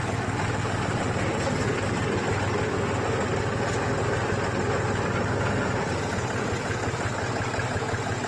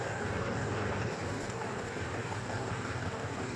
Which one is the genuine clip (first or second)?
first